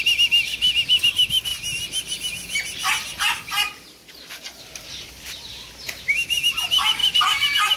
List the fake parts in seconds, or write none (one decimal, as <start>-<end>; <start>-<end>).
none